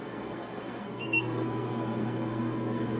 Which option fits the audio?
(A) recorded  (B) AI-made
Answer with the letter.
B